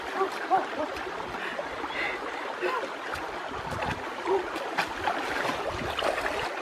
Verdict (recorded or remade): recorded